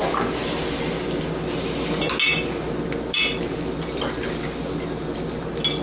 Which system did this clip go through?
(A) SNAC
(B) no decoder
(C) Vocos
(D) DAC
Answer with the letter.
B